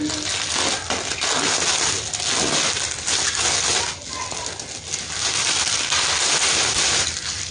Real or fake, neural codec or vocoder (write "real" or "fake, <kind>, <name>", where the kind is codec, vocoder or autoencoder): real